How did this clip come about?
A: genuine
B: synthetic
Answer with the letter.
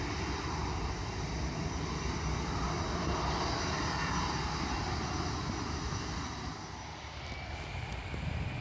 A